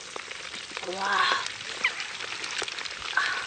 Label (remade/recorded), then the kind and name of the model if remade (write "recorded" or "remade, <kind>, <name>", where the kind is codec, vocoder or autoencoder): recorded